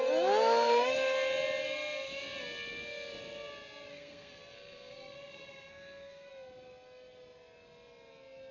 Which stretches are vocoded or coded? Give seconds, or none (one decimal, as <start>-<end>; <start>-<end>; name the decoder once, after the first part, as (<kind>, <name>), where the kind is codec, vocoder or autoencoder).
3.9-6.3 (codec, SNAC)